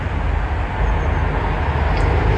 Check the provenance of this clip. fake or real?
real